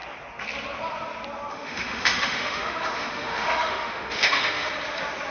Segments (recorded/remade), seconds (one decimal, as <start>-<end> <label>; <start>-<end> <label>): 0.0-1.5 recorded; 1.5-4.7 remade; 4.7-5.3 recorded

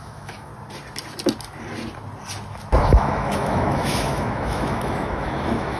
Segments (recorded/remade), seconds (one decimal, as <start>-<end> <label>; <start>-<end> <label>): 0.0-0.5 remade; 0.5-2.8 recorded; 2.8-5.8 remade